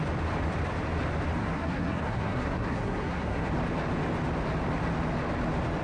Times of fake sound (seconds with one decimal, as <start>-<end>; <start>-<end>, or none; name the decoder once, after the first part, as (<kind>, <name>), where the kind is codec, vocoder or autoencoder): 1.4-3.5 (codec, SNAC)

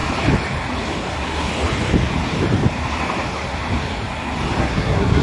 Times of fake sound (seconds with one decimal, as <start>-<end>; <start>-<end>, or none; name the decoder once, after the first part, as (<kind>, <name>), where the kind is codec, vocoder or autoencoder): 1.1-1.5 (codec, SNAC); 4.6-5.2

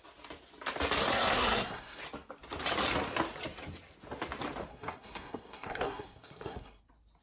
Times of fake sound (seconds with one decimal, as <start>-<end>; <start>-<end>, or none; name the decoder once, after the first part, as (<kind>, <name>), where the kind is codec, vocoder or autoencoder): 1.1-2.0 (codec, SNAC); 4.7-6.8

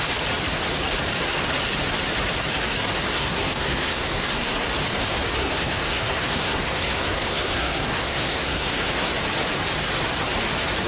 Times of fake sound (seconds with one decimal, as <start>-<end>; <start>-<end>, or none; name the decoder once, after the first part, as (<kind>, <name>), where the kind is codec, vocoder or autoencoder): 3.1-4.7 (codec, SNAC); 5.4-9.1

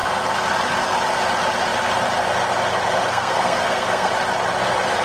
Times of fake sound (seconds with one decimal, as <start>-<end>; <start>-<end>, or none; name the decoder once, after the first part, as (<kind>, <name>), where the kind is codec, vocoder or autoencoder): 3.1-4.1 (codec, SNAC)

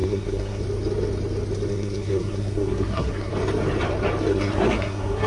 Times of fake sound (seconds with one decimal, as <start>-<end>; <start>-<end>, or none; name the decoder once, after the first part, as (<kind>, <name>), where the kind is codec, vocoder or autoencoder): 0.0-0.6 (codec, SNAC); 1.7-3.3; 4.3-5.3

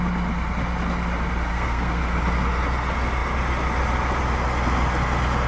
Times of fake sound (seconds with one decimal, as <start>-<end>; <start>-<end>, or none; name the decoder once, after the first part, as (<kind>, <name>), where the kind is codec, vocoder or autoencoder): 1.5-2.0 (codec, SNAC)